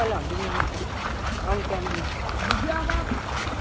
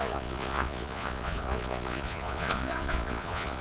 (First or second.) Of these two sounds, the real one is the first